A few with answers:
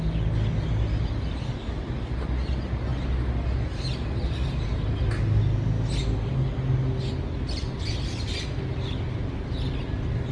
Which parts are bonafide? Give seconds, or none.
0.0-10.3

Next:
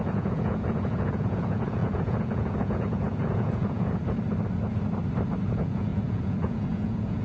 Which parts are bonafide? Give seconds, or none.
4.0-5.5

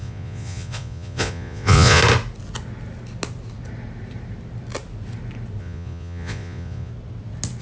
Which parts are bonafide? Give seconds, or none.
2.0-5.6; 6.9-7.6

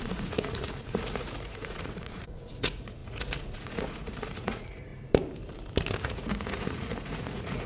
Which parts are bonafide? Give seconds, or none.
4.9-6.0

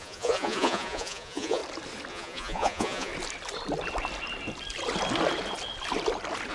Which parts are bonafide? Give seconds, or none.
1.6-2.1; 3.1-6.5

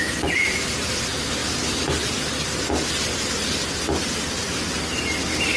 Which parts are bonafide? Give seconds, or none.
0.0-5.6

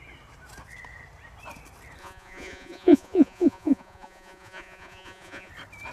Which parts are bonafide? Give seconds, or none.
0.0-2.0; 5.5-5.9